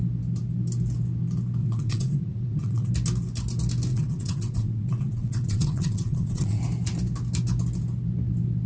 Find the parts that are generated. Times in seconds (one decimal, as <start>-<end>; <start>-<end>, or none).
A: 1.6-2.9; 3.9-6.6